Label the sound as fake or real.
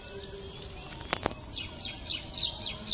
real